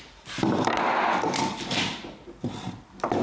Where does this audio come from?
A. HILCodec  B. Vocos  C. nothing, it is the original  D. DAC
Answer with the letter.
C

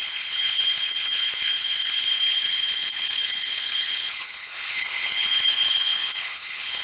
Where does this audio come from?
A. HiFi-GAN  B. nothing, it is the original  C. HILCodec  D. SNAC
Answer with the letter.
C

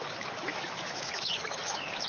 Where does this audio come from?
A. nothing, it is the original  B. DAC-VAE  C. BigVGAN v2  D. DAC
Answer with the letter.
B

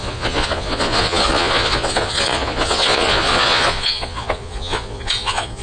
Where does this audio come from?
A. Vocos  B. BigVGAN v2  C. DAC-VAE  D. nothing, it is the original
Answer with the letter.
A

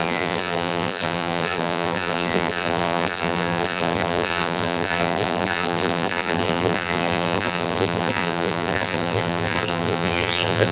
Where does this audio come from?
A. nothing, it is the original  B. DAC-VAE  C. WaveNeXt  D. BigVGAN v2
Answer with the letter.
D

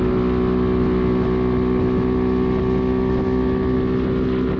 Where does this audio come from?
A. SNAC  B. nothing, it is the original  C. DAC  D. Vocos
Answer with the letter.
B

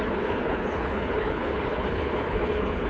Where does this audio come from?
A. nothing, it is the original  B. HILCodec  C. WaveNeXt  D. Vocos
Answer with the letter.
B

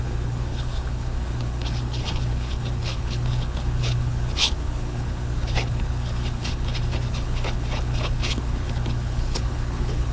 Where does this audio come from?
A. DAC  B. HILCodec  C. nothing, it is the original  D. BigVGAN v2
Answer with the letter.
B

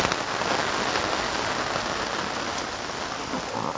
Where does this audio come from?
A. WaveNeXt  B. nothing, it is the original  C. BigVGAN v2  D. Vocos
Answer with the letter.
B